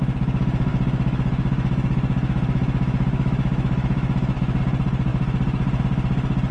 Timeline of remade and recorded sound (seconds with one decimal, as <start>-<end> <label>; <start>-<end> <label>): 0.0-0.7 recorded; 0.7-4.6 remade; 4.6-6.5 recorded